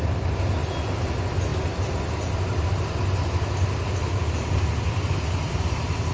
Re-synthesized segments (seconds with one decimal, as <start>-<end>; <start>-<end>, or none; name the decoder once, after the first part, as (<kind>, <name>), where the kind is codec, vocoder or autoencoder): none